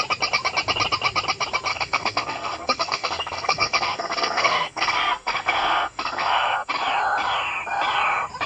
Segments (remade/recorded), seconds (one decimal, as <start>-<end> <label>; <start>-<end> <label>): 0.0-1.7 recorded; 1.7-6.7 remade; 6.7-8.5 recorded